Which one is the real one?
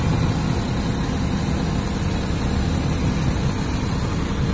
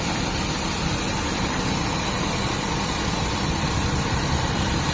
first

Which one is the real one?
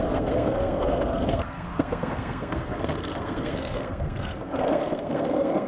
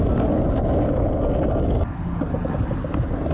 second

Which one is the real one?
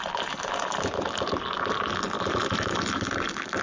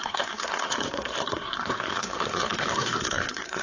first